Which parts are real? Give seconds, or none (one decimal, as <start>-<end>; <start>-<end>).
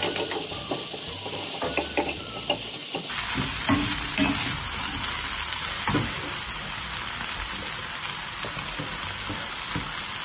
0.0-10.2